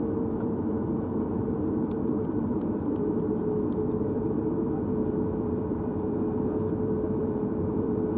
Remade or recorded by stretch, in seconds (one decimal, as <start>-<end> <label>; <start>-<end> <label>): 0.0-8.2 remade